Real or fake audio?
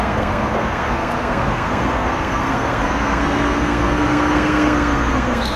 fake